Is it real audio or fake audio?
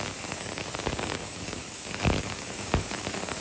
fake